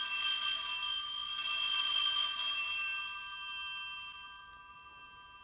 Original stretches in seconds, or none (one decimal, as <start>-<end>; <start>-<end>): 0.0-5.4